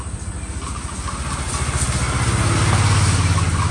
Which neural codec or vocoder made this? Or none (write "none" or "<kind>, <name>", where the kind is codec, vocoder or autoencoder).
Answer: none